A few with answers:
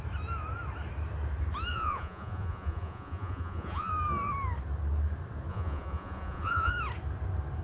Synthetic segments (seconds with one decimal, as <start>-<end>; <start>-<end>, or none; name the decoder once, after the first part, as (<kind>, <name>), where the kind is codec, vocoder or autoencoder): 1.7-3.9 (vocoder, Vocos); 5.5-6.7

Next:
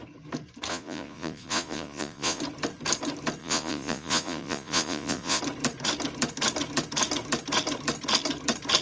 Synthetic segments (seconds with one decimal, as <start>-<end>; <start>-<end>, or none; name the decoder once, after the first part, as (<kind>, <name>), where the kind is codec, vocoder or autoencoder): 0.7-2.4 (vocoder, Vocos); 3.4-5.4

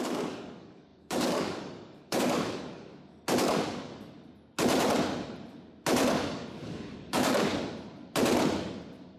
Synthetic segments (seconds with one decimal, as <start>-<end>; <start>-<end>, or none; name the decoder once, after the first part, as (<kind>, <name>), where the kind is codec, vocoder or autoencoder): 0.0-2.9 (codec, DAC); 3.4-3.9; 6.1-7.5

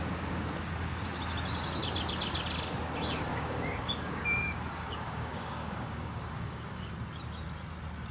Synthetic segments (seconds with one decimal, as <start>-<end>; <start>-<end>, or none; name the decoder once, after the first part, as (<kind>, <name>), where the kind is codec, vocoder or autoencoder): 3.3-6.9 (codec, DAC)

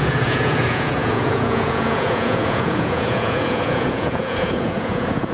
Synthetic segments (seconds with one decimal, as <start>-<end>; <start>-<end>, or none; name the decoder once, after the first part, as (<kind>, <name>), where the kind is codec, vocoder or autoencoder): 0.0-5.3 (vocoder, Vocos)

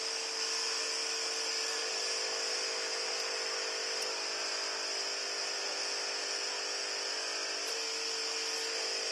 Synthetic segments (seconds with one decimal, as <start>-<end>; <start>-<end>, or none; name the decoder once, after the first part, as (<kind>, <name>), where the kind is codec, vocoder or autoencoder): none